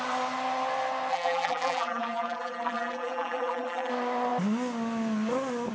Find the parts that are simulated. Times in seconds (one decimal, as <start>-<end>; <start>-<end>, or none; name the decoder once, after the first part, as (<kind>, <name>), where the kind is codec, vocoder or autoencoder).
1.1-3.9 (vocoder, BigVGAN v2)

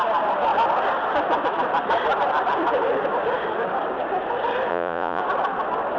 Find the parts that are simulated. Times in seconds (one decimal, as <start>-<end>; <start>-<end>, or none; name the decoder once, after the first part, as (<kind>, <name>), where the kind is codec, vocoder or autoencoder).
4.7-5.2 (vocoder, Vocos)

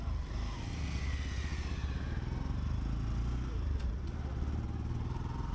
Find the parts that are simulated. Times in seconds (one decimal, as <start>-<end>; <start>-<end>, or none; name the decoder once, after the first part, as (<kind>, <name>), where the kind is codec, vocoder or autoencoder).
none